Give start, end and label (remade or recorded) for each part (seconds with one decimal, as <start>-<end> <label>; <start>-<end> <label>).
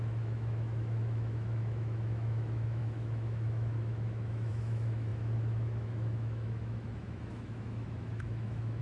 0.0-8.8 remade